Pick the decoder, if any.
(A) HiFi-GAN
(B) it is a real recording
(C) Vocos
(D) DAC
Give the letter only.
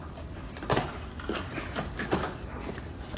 B